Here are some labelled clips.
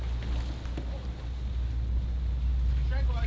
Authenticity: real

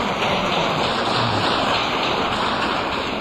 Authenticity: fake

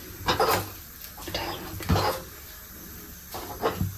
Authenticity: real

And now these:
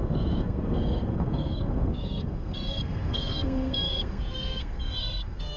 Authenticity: fake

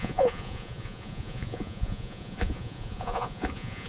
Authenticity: fake